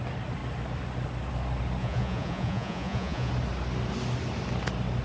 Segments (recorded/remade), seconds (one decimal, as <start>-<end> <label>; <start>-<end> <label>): 0.0-1.8 recorded; 1.8-3.3 remade; 3.3-5.0 recorded